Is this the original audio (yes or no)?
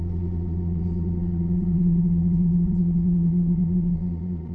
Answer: no